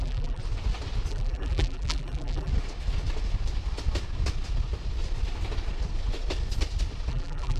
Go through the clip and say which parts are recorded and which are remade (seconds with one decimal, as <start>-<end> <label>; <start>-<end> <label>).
0.0-0.4 remade; 0.4-1.1 recorded; 1.1-2.5 remade; 2.5-7.1 recorded; 7.1-7.6 remade